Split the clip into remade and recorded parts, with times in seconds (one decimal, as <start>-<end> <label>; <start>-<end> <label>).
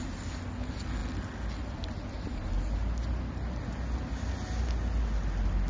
0.0-5.7 recorded